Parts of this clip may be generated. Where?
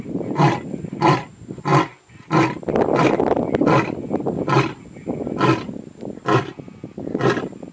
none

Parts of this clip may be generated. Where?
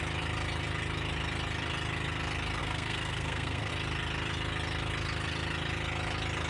2.6-3.7 (codec, SNAC)